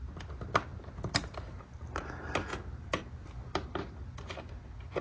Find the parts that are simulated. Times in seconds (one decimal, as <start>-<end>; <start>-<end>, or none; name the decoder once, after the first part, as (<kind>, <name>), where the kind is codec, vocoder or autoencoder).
none